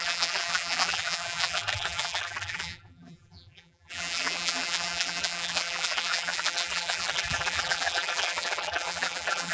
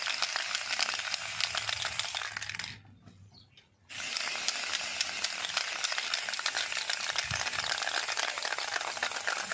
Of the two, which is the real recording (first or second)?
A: second